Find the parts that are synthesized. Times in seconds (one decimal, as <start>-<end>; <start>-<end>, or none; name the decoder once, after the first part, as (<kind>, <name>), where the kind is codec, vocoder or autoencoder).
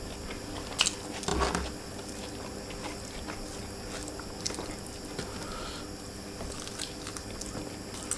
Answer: none